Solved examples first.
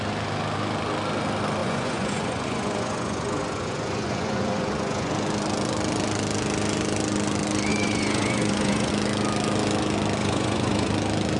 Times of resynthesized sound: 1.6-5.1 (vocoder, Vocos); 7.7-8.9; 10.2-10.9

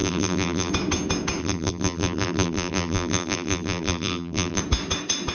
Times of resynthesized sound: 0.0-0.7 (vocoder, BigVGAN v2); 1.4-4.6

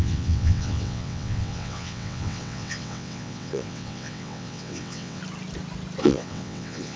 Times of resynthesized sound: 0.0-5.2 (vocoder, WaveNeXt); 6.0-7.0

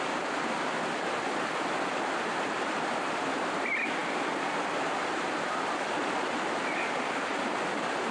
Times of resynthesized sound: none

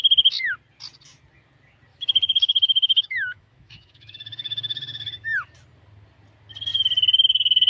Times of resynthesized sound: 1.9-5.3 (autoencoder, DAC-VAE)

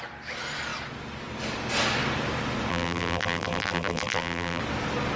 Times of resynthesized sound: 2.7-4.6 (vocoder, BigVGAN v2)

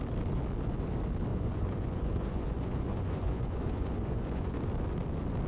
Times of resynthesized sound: 1.3-4.6 (vocoder, Vocos)

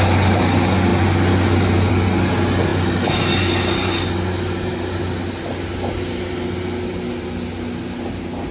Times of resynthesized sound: none